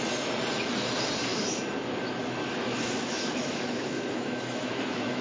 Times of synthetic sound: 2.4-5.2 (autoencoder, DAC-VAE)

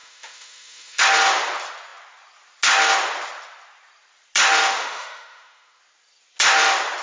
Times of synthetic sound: 0.0-1.0 (autoencoder, DAC-VAE); 4.7-5.8

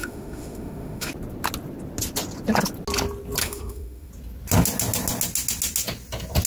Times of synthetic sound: 0.0-1.1 (autoencoder, DAC-VAE); 3.4-4.1